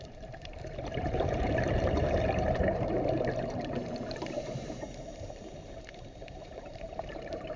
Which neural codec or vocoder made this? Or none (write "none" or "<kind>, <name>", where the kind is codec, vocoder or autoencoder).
vocoder, BigVGAN v2